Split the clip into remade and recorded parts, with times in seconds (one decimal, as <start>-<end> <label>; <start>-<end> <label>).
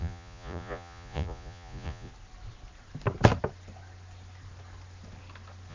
0.0-2.1 remade; 2.1-5.7 recorded